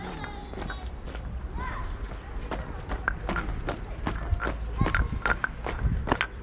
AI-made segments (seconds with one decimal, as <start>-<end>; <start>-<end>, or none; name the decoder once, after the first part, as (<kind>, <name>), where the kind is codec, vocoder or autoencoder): none